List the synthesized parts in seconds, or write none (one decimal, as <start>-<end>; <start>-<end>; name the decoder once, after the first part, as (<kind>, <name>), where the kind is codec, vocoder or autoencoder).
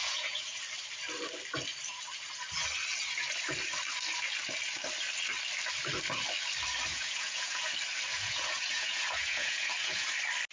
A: 0.0-0.6 (vocoder, Vocos); 6.9-7.7; 8.1-10.1